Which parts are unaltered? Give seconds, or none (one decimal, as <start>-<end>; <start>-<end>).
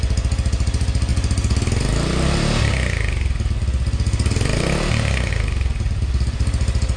0.0-7.0